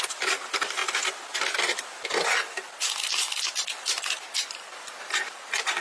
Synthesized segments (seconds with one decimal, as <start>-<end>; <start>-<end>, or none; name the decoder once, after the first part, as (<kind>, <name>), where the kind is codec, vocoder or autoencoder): 0.0-0.8 (vocoder, BigVGAN v2); 4.3-5.8